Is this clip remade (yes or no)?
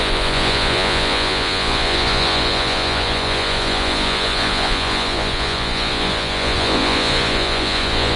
yes